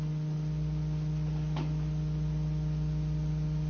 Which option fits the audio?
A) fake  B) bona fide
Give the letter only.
B